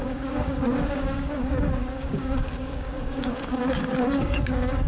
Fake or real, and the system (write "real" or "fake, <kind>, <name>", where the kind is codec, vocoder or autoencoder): fake, codec, DAC